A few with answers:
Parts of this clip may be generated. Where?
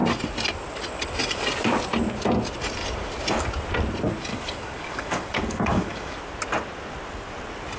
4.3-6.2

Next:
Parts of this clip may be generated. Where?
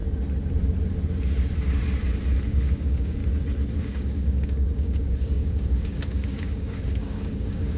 2.5-3.2; 3.8-7.8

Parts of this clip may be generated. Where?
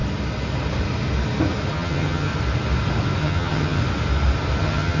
1.7-2.3; 3.2-3.8; 4.6-5.0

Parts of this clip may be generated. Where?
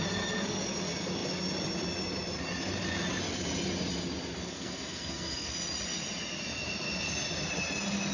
4.4-5.5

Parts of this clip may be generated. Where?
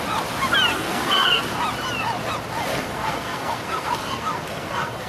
0.7-1.4; 2.7-5.1